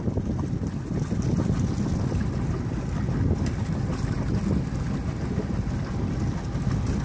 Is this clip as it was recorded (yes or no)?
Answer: yes